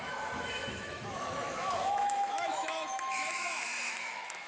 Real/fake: fake